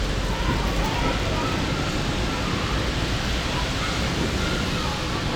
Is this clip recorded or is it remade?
recorded